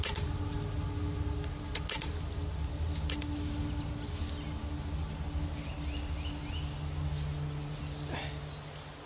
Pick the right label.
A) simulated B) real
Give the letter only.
B